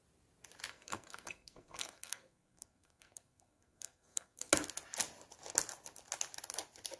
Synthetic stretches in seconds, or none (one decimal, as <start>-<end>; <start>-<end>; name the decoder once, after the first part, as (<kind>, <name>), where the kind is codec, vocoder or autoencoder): 0.7-4.5 (codec, SNAC)